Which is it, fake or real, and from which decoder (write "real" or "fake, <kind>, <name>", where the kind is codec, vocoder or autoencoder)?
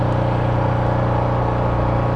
real